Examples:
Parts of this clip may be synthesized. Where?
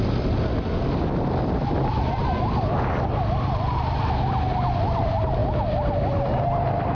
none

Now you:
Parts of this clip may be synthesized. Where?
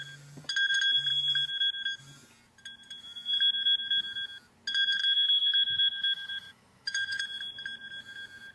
5.0-7.2 (autoencoder, DAC-VAE)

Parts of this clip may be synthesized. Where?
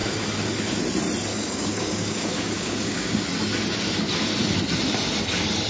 1.3-3.2 (codec, DAC)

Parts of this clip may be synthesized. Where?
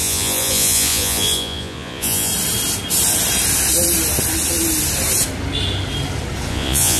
0.0-2.3 (vocoder, Vocos); 6.5-7.0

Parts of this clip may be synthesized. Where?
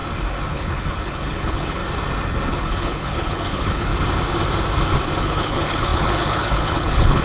0.5-1.8 (codec, HILCodec); 2.5-3.9; 5.2-7.2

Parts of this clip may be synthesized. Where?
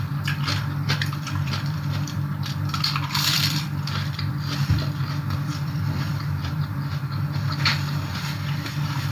0.0-9.1 (vocoder, BigVGAN v2)